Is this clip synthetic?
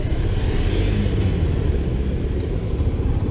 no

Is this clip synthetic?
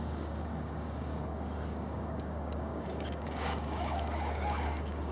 yes